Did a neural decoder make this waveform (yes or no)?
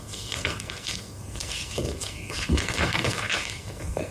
yes